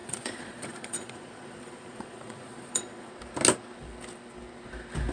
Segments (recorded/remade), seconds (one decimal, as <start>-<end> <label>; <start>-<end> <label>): 0.0-3.1 remade; 3.1-5.1 recorded